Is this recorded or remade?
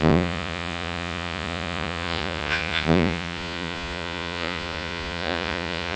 remade